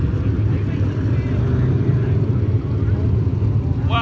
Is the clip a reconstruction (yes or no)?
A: no